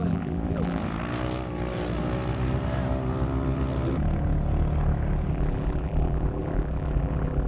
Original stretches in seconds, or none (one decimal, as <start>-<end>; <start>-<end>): 0.8-5.3